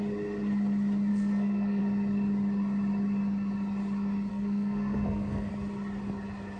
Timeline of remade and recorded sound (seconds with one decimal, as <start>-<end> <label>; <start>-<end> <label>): 0.0-1.1 recorded; 1.1-1.8 remade; 1.8-4.3 recorded; 4.3-5.5 remade; 5.5-6.6 recorded